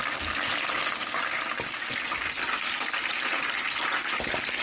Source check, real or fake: real